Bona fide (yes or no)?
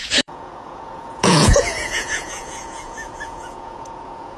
no